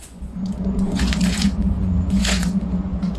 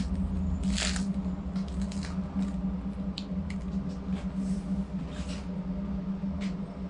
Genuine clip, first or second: second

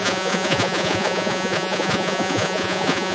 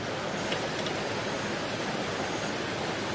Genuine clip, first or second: second